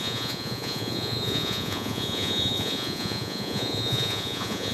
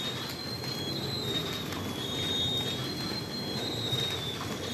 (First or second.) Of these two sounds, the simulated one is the first